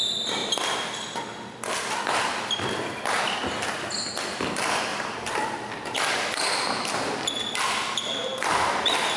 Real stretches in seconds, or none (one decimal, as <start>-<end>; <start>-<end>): 0.0-0.4; 3.2-4.9; 6.1-9.2